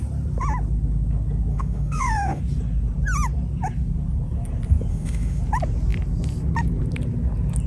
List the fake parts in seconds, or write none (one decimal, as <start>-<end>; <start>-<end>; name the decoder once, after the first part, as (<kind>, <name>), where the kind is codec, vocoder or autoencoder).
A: 1.5-2.4 (autoencoder, DAC-VAE); 4.9-5.4